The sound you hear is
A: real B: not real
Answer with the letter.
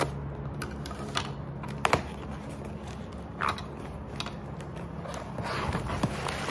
A